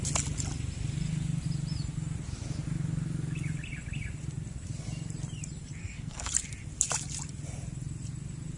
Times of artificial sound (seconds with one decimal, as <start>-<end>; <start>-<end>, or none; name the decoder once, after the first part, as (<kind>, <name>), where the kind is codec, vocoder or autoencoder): 5.8-6.3 (codec, SNAC)